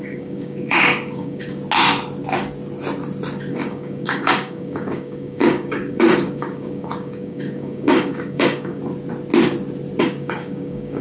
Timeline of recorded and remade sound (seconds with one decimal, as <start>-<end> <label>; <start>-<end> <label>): 0.0-1.6 remade; 1.6-3.5 recorded; 3.5-8.8 remade; 8.8-10.0 recorded; 10.0-11.0 remade